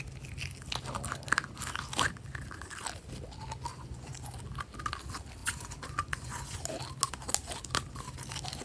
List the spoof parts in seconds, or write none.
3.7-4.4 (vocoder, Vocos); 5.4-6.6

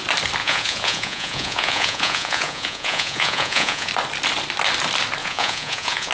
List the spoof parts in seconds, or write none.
0.4-3.9 (vocoder, Vocos); 5.2-6.1

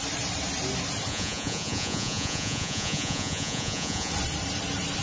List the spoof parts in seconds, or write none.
1.1-4.1 (vocoder, Vocos)

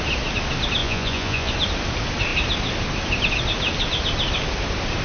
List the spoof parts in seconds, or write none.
0.8-1.5 (vocoder, Vocos)

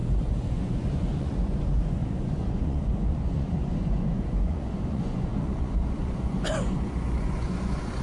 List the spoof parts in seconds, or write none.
0.0-8.0 (vocoder, Vocos)

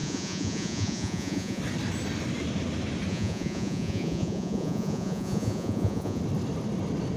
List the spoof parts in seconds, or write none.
0.0-1.6 (vocoder, Vocos); 3.1-6.2

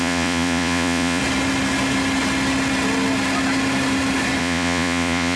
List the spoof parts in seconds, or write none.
0.0-1.2 (vocoder, Vocos); 4.4-5.4